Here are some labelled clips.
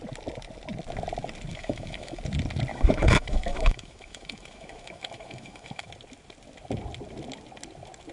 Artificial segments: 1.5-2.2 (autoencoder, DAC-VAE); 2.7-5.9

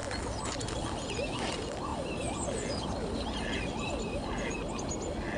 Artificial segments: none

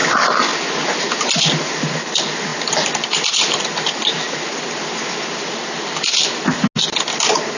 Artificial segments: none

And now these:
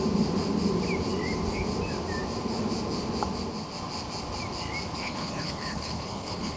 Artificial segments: 5.0-6.6 (codec, HILCodec)